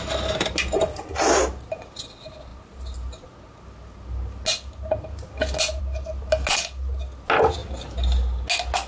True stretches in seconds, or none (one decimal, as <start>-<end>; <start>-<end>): 0.0-8.9